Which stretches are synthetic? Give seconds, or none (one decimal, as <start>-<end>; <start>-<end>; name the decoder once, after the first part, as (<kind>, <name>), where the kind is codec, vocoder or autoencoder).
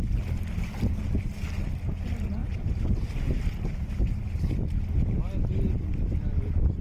none